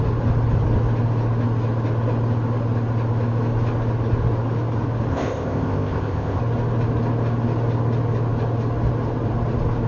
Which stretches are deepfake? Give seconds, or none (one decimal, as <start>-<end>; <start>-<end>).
5.1-6.4